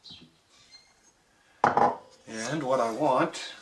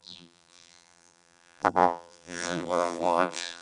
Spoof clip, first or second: second